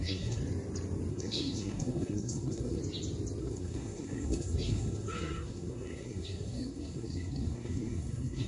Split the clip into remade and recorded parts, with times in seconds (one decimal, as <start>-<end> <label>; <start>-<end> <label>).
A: 0.0-0.4 remade; 0.4-1.1 recorded; 1.1-2.8 remade; 2.8-3.4 recorded; 3.4-8.5 remade